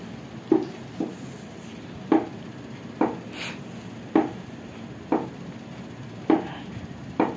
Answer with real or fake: real